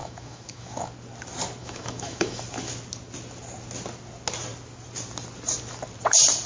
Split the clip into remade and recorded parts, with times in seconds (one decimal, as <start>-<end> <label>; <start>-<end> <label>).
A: 0.0-0.9 remade; 0.9-1.6 recorded; 1.6-2.4 remade; 2.4-6.5 recorded